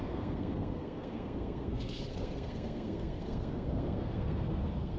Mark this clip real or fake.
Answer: fake